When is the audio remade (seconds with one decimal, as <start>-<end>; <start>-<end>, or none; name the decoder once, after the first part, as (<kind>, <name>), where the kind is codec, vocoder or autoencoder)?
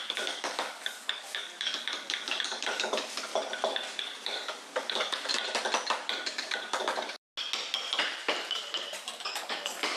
0.0-3.3 (codec, DAC); 4.0-5.3; 6.3-7.3; 8.5-10.0